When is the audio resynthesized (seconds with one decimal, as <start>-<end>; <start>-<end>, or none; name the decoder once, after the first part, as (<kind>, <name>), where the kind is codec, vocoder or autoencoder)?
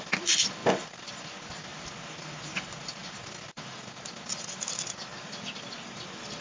none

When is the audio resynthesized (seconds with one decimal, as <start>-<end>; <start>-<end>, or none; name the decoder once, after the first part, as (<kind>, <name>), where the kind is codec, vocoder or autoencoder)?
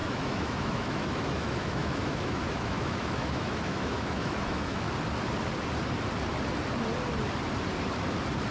0.0-4.9 (autoencoder, DAC-VAE)